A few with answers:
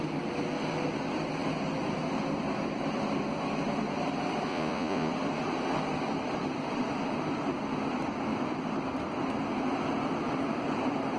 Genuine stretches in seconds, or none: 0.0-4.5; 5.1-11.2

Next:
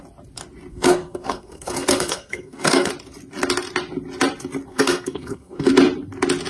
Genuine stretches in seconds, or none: 0.0-0.7; 2.9-4.7; 5.7-6.5

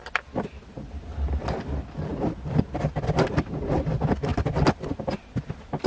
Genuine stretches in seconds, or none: 0.0-2.1; 3.0-5.9

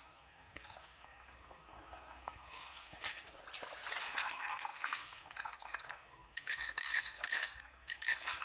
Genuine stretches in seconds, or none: 3.4-4.0